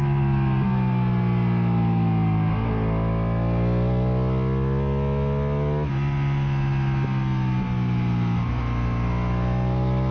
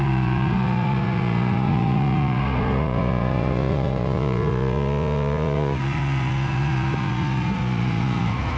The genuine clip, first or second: first